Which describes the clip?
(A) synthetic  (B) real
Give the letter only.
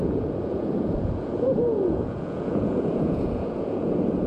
A